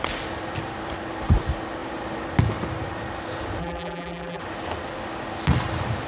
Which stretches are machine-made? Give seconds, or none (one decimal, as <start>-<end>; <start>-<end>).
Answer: 3.6-4.4